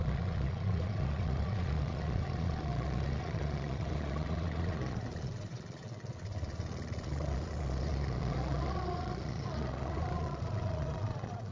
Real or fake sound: fake